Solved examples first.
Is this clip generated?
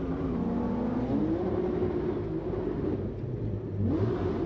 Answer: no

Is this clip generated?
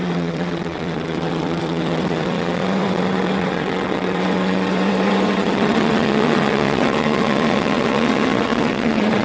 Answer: yes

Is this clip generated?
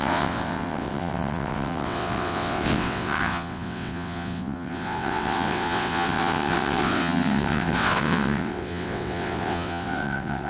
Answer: yes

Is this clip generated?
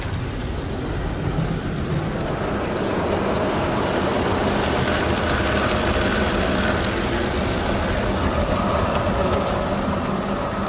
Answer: no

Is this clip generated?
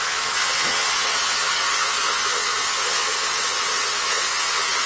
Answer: yes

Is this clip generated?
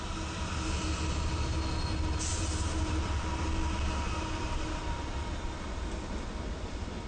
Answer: no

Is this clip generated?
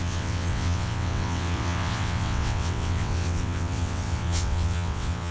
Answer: yes